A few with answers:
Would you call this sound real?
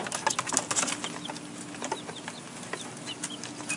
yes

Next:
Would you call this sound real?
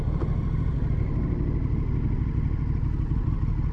yes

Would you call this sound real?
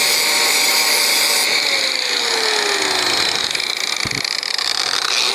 yes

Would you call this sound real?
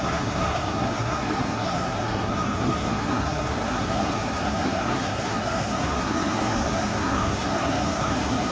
no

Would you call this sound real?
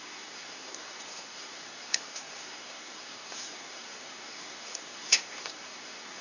no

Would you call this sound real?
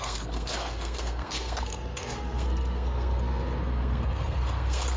no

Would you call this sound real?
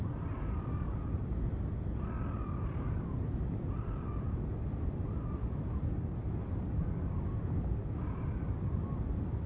yes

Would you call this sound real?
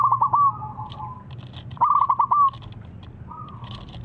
yes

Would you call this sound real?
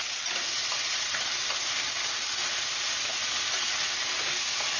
yes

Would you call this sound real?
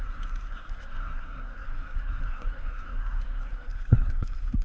no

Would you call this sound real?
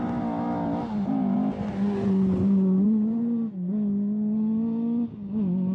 yes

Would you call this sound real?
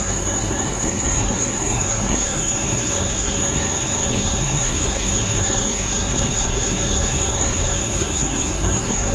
no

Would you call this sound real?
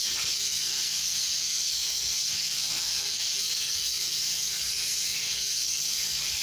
no